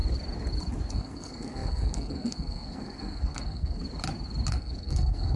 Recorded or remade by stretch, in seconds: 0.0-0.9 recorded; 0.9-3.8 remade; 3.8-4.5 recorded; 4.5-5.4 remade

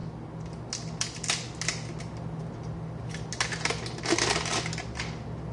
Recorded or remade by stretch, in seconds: 0.0-5.5 recorded